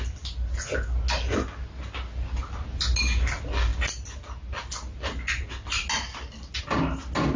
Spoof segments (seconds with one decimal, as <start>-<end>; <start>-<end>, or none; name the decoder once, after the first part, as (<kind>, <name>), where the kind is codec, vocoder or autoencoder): none